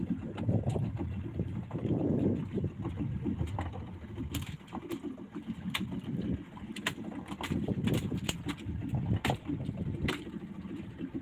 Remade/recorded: recorded